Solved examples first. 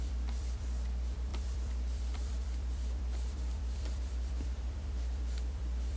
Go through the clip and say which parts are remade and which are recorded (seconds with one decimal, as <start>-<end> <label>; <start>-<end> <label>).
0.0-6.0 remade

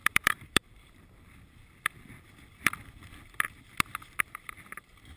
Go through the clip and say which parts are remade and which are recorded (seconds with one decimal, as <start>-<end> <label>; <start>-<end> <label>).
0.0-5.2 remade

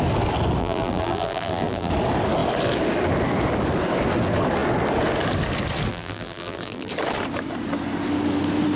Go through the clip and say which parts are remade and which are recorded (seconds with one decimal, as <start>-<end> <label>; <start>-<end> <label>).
0.0-0.6 recorded; 0.6-1.9 remade; 1.9-5.9 recorded; 5.9-6.9 remade; 6.9-8.8 recorded

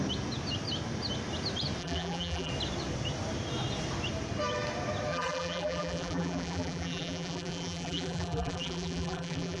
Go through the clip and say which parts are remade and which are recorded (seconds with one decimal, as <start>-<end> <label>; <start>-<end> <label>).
0.0-1.8 recorded; 1.8-2.5 remade; 2.5-5.1 recorded; 5.1-9.6 remade

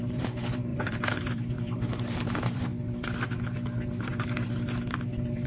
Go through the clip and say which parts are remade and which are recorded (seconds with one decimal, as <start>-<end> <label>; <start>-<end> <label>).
0.0-2.7 remade; 2.7-5.5 recorded

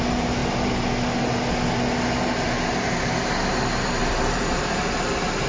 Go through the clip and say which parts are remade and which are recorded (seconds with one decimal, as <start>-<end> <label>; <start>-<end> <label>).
0.0-4.0 recorded; 4.0-4.8 remade; 4.8-5.5 recorded

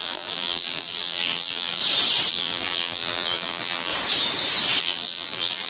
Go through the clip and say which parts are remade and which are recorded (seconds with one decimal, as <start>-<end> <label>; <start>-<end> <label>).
0.0-1.8 remade; 1.8-2.3 recorded; 2.3-3.9 remade; 3.9-4.8 recorded; 4.8-5.7 remade